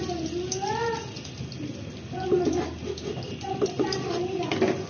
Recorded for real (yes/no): yes